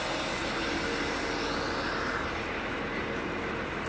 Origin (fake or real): real